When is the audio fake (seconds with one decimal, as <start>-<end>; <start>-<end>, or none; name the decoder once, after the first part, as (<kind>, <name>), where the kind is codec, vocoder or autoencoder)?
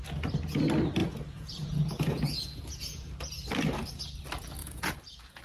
1.0-3.3 (vocoder, Vocos); 4.6-5.4